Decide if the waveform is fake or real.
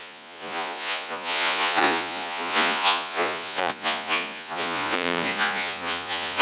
fake